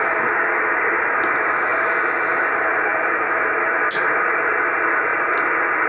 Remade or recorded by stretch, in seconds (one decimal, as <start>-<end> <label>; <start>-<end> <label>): 0.0-5.9 recorded